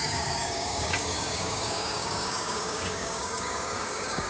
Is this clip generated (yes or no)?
yes